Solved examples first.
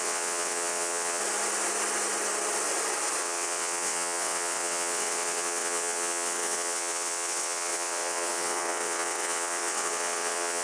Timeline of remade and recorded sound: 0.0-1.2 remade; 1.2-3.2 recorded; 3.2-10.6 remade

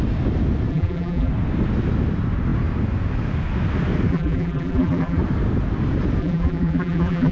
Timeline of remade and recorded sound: 0.0-0.7 recorded; 0.7-1.3 remade; 1.3-4.1 recorded; 4.1-5.2 remade; 5.2-6.2 recorded; 6.2-7.3 remade

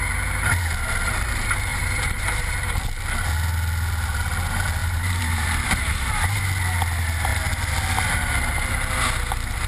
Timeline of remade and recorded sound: 0.0-1.7 recorded; 1.7-2.5 remade; 2.5-4.8 recorded; 4.8-6.4 remade; 6.4-9.7 recorded

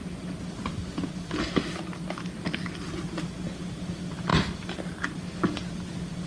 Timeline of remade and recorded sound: 0.0-6.3 recorded